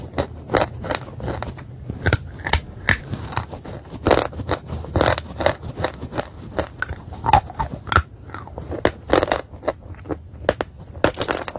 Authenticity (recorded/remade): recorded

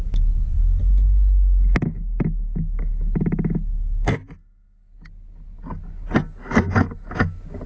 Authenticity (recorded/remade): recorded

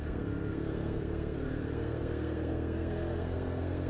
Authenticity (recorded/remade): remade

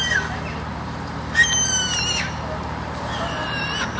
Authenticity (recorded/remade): recorded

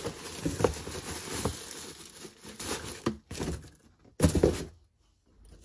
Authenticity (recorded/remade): recorded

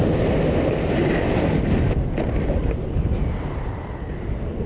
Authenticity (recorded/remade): recorded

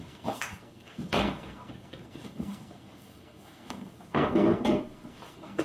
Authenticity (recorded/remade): remade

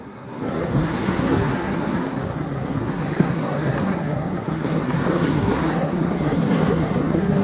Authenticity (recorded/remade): remade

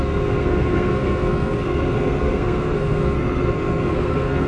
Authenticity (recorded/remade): remade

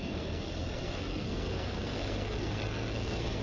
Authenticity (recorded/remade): remade